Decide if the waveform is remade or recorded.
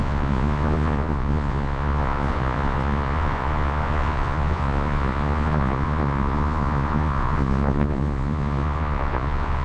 remade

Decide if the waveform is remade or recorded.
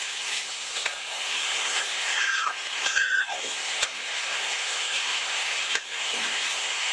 remade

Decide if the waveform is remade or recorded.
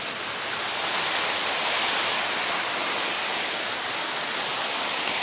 recorded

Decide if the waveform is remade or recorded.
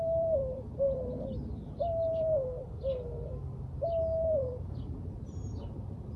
remade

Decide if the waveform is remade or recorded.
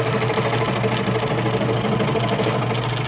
recorded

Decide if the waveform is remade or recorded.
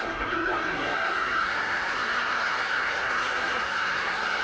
remade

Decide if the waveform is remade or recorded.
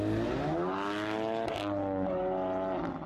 recorded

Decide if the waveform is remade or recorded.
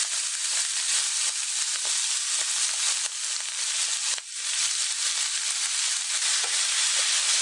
recorded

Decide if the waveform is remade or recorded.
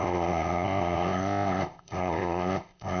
remade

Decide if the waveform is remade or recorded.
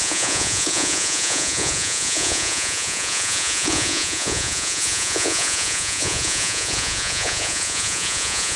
remade